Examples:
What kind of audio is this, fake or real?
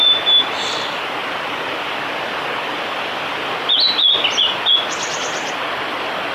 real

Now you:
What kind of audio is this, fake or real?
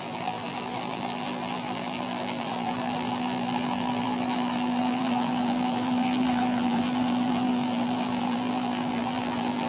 fake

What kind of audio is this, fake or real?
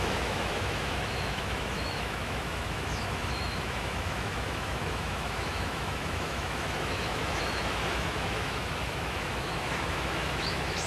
fake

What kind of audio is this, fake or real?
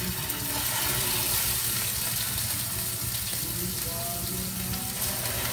real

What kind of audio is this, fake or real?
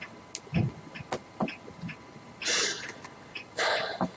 real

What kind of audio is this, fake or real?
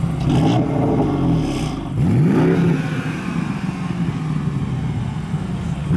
real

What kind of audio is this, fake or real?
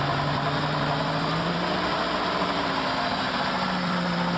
real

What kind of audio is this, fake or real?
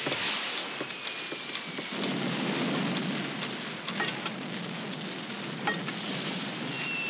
real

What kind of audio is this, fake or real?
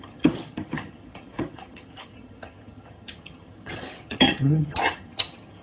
fake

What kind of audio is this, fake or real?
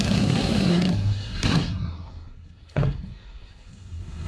fake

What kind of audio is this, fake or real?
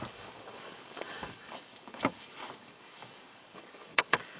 fake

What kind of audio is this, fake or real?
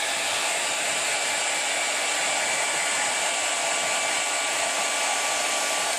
real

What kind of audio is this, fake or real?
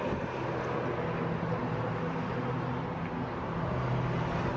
real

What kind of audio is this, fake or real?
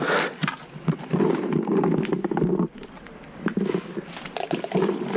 real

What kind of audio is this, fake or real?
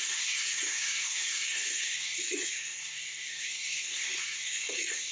fake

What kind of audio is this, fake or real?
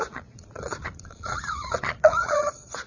fake